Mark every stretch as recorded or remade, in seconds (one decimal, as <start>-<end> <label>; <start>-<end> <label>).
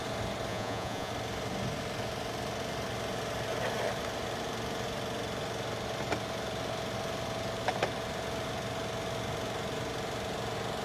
0.0-0.5 recorded; 0.5-1.1 remade; 1.1-10.8 recorded